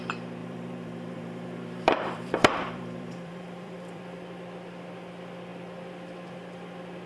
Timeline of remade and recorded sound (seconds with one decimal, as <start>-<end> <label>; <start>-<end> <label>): 0.0-0.4 recorded; 0.4-4.0 remade; 4.0-7.1 recorded